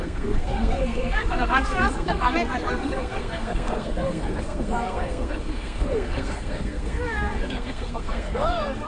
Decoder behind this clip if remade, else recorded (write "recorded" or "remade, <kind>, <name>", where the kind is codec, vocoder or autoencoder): remade, codec, SNAC